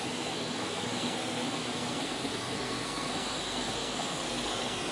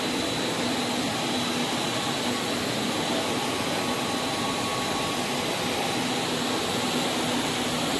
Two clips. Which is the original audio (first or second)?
second